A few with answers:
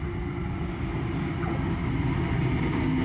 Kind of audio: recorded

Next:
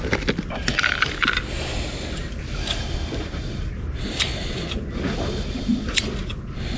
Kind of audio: recorded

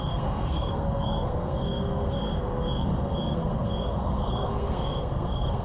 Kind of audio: remade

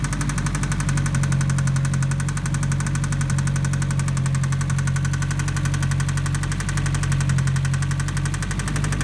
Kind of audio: recorded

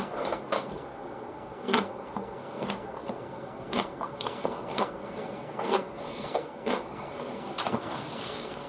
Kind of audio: remade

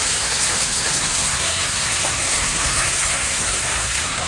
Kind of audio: remade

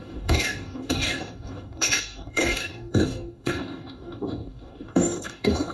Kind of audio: remade